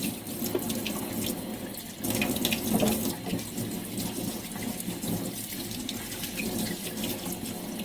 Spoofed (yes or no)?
no